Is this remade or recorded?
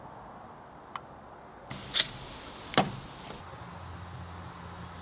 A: recorded